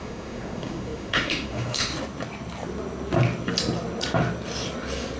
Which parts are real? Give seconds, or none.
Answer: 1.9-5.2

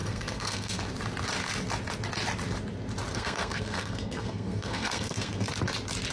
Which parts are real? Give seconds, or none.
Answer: 0.8-3.1; 5.5-6.1

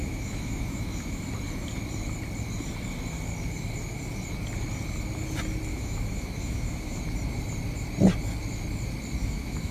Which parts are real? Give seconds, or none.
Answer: 1.2-5.7; 7.0-9.2

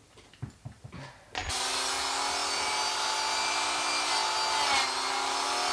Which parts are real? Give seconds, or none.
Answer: 0.0-5.7

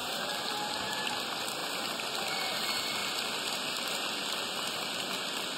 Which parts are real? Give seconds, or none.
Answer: 1.0-5.6

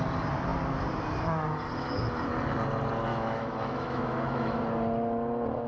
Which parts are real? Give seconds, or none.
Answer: 0.0-3.1; 4.6-5.7

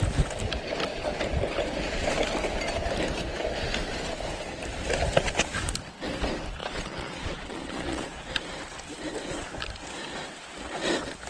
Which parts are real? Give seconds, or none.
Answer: 0.0-6.6; 8.1-11.3

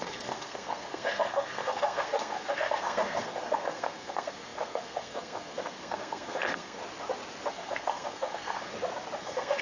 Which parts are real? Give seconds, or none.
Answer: 6.8-7.5; 8.7-9.2